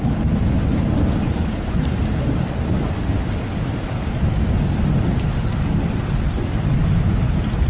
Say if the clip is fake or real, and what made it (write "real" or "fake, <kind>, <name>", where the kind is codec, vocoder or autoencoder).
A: real